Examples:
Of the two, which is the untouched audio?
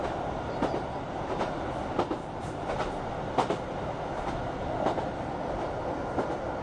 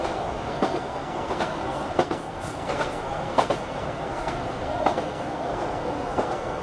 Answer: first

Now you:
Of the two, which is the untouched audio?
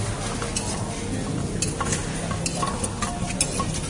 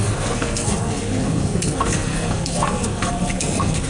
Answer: first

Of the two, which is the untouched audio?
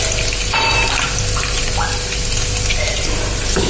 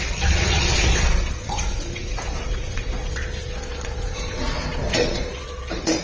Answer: first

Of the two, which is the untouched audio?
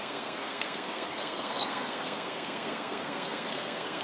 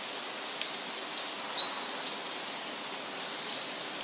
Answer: second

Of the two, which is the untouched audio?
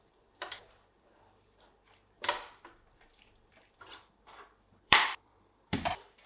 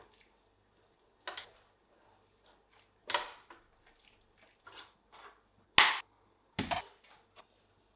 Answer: second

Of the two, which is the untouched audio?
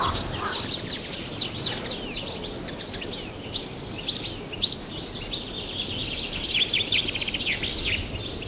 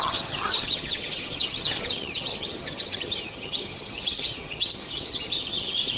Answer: first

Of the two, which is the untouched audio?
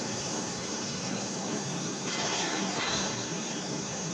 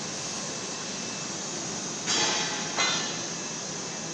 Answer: second